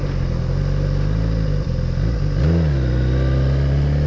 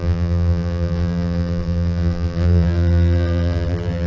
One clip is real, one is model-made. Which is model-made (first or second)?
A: second